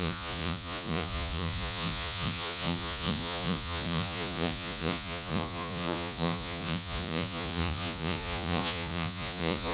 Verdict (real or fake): fake